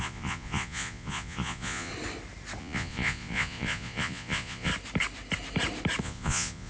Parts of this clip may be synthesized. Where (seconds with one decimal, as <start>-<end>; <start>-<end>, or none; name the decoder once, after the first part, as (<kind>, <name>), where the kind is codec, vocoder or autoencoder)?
0.0-1.9 (vocoder, Vocos); 2.6-4.7; 6.0-6.7